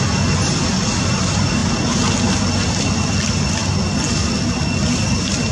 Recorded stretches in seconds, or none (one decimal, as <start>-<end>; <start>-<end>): 0.0-5.5